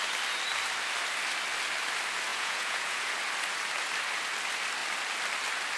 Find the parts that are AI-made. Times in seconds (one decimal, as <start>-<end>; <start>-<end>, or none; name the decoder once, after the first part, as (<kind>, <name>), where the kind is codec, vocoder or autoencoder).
2.3-3.1 (vocoder, Vocos)